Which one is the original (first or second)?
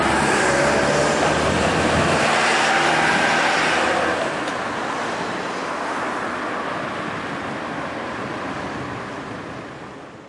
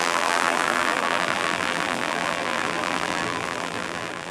first